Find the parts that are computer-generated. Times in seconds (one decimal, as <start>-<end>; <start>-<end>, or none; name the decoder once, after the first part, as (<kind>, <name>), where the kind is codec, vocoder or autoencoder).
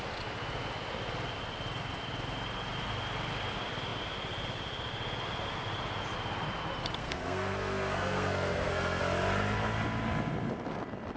7.0-9.0 (codec, SNAC)